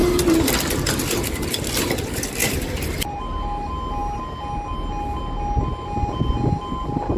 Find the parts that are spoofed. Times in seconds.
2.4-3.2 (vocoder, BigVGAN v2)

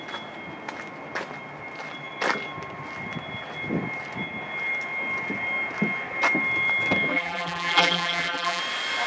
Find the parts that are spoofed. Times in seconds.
7.1-8.6 (vocoder, BigVGAN v2)